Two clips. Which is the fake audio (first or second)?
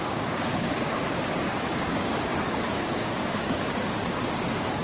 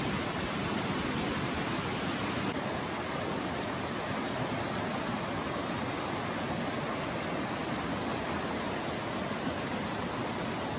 first